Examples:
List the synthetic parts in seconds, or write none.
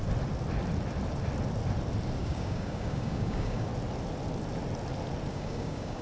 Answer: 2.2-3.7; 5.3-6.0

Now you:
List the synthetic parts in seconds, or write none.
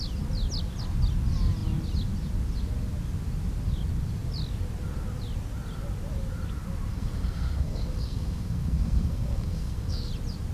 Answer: 6.9-10.1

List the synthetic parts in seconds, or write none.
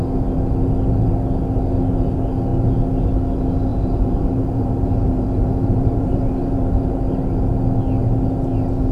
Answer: 3.7-7.0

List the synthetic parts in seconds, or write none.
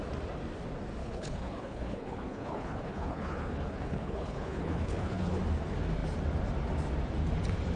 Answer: 1.0-5.4